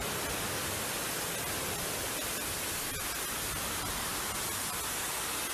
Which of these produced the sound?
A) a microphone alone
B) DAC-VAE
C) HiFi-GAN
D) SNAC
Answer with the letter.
A